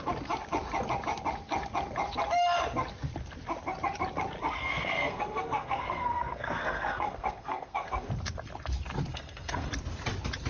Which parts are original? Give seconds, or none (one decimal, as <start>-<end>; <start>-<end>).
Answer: 0.0-4.6; 8.1-9.1; 9.7-10.5